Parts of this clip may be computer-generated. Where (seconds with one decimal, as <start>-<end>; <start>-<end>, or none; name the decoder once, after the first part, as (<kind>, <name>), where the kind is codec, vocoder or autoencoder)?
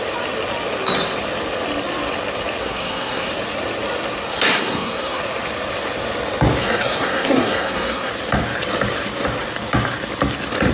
2.6-3.3 (codec, SNAC); 4.3-5.2; 6.6-8.1